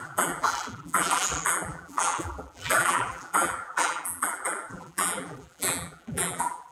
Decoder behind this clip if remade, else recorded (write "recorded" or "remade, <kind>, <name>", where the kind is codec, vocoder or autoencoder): remade, vocoder, BigVGAN v2